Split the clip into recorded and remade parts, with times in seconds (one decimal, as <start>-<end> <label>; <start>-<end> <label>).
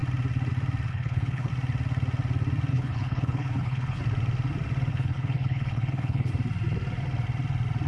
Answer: 0.0-0.9 recorded; 0.9-1.5 remade; 1.5-2.7 recorded; 2.7-4.0 remade; 4.0-4.9 recorded; 4.9-6.3 remade; 6.3-7.9 recorded